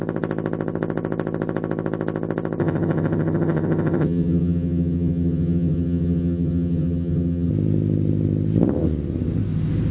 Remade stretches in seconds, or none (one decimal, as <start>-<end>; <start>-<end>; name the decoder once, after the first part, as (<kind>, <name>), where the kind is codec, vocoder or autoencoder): 2.6-7.5 (vocoder, HiFi-GAN)